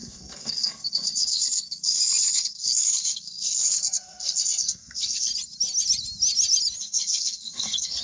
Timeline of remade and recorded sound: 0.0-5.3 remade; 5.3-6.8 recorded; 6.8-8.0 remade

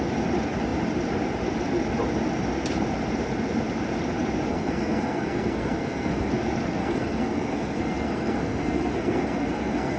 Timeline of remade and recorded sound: 0.0-4.5 recorded; 4.5-6.3 remade; 6.3-6.8 recorded; 6.8-10.0 remade

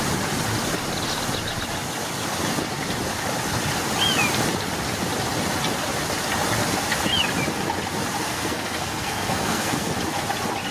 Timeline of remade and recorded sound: 0.0-8.2 recorded; 8.2-9.9 remade; 9.9-10.7 recorded

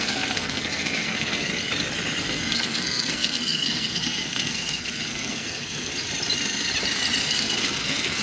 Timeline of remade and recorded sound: 0.0-1.5 remade; 1.5-2.2 recorded; 2.2-5.9 remade; 5.9-7.2 recorded; 7.2-8.2 remade

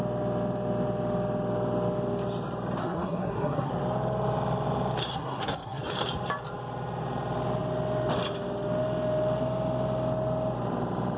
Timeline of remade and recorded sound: 0.0-2.8 recorded; 2.8-3.7 remade; 3.7-5.1 recorded; 5.1-5.8 remade; 5.8-11.2 recorded

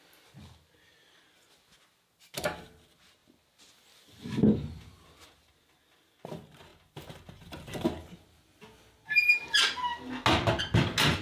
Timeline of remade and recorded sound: 0.0-11.2 recorded

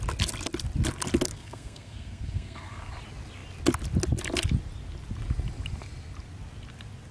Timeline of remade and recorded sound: 0.0-1.3 recorded; 1.3-2.9 remade; 2.9-7.1 recorded